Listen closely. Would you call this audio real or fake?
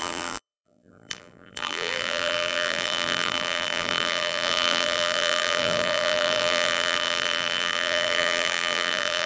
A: fake